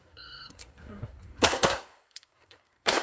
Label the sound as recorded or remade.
remade